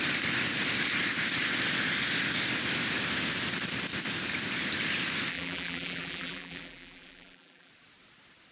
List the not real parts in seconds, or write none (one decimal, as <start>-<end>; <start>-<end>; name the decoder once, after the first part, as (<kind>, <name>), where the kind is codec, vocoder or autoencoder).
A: 5.3-7.7 (vocoder, BigVGAN v2)